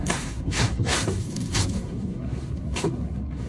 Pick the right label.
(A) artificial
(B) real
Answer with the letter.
A